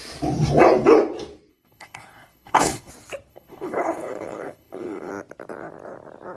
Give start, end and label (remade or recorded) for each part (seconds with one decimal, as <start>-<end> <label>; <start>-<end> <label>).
0.0-1.5 recorded; 1.5-2.9 remade; 2.9-3.3 recorded; 3.3-5.1 remade; 5.1-6.4 recorded